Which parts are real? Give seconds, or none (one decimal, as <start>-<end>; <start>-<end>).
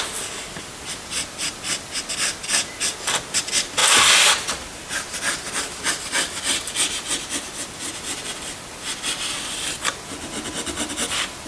0.0-11.5